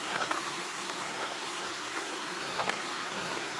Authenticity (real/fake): fake